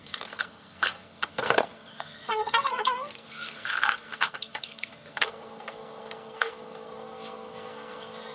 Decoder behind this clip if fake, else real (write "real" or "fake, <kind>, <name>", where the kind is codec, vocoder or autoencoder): fake, codec, SNAC